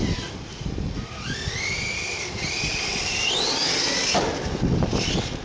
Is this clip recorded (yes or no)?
yes